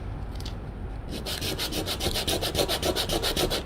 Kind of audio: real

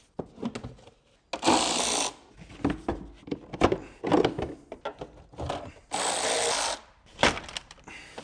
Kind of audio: real